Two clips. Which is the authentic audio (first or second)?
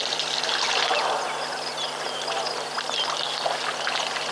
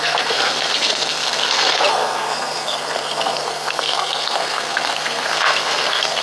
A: first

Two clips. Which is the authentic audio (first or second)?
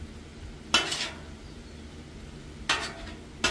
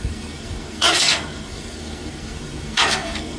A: first